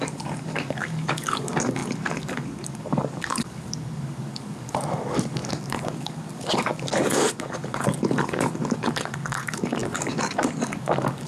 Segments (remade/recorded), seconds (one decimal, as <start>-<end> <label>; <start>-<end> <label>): 0.0-11.3 remade